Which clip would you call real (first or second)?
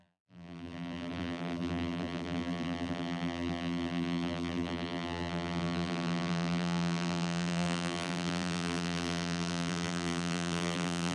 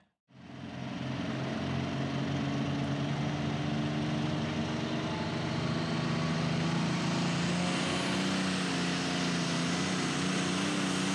second